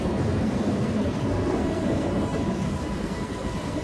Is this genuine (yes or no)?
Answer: no